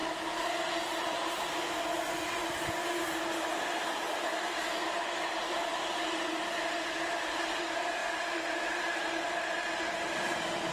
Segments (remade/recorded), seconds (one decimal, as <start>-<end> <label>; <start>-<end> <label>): 0.0-0.7 recorded; 0.7-2.4 remade; 2.4-3.9 recorded; 3.9-8.0 remade; 8.0-10.1 recorded; 10.1-10.7 remade